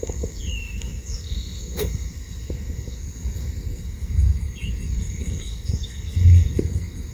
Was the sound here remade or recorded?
remade